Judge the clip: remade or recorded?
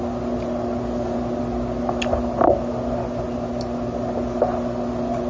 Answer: recorded